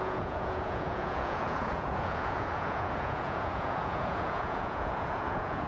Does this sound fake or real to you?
fake